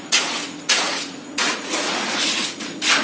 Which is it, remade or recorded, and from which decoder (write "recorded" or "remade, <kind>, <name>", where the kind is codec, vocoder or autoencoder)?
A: remade, vocoder, Vocos